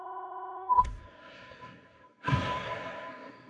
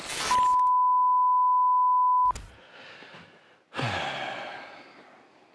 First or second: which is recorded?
second